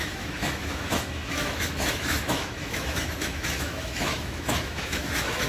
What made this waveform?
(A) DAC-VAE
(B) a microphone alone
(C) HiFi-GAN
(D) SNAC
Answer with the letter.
A